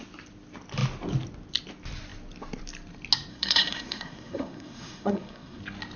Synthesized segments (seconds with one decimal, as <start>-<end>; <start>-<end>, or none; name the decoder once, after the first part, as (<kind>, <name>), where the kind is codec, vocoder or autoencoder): 3.3-5.6 (codec, SNAC)